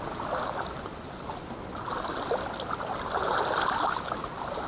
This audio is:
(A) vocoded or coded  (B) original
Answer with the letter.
B